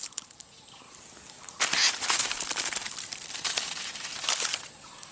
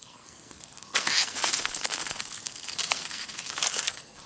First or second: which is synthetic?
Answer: second